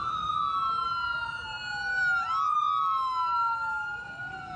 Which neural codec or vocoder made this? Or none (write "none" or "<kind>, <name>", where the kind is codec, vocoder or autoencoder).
none